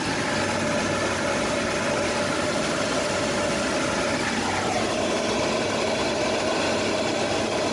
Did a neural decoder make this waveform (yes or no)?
no